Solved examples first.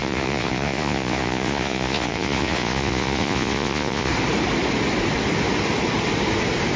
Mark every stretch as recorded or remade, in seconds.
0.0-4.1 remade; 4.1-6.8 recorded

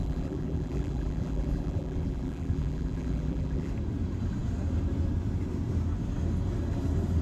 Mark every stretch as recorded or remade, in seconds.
0.0-3.7 remade; 3.7-7.2 recorded